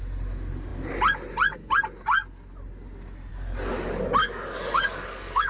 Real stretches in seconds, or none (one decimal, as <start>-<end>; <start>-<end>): 0.0-4.2